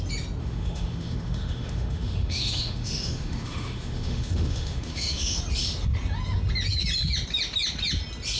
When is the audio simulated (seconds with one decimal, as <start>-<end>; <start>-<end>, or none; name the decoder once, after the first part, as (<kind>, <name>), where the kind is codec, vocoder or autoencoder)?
0.4-5.4 (autoencoder, DAC-VAE)